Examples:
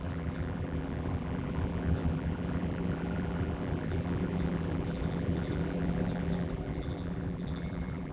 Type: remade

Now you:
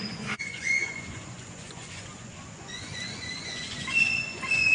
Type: remade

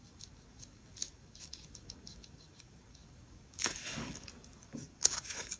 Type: remade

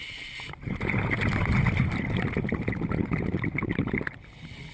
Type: recorded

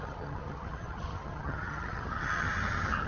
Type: remade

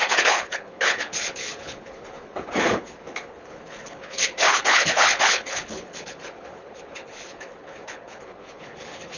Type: remade